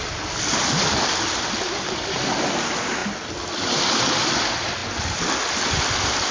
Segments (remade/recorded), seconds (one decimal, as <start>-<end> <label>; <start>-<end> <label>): 0.0-6.3 recorded